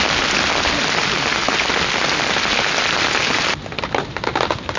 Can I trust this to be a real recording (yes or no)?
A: yes